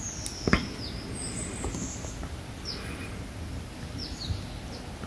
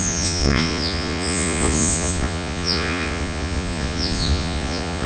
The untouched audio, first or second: first